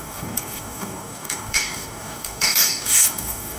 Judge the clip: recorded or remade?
remade